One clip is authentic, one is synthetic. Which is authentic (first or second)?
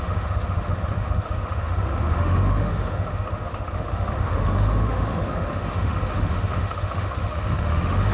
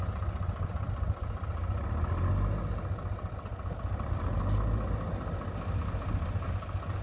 second